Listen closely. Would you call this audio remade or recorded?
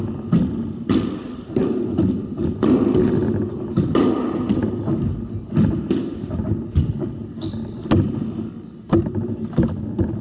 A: recorded